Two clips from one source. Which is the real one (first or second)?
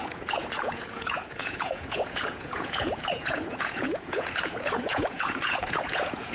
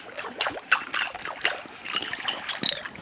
second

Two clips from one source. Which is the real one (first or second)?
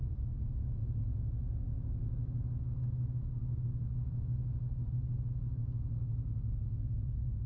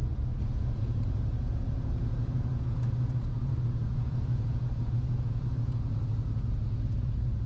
first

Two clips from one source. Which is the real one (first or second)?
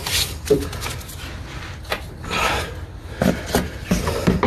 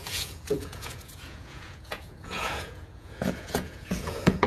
first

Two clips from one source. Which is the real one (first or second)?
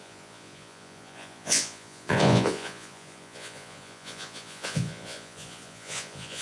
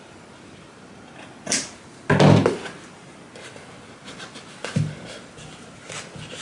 second